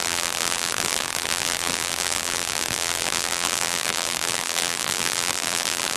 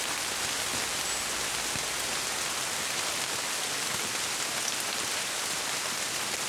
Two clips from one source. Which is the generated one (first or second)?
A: first